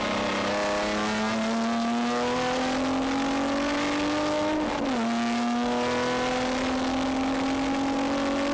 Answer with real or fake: real